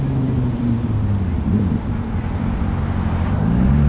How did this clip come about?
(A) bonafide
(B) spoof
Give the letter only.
A